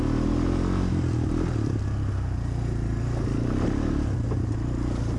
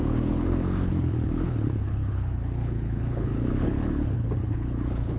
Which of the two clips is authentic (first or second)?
first